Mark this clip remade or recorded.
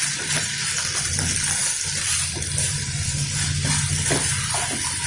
recorded